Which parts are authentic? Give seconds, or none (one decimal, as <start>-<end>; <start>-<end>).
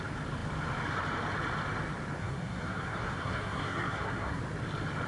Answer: 0.0-2.2; 4.4-5.1